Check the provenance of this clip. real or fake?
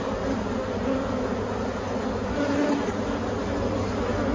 real